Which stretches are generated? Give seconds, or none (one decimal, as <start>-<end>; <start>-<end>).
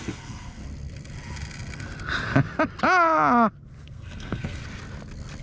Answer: 0.0-0.6; 3.8-4.6